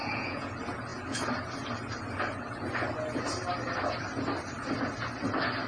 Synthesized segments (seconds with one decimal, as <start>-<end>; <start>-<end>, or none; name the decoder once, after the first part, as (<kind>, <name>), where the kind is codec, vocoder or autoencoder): 0.0-0.5 (vocoder, Vocos)